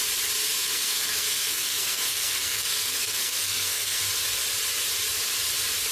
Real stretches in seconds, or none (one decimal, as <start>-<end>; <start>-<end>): 0.0-0.5; 4.0-5.9